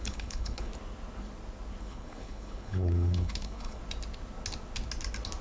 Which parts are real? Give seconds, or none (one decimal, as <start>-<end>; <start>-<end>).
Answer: 0.7-1.8; 3.8-5.4